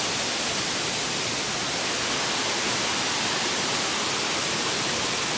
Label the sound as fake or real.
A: real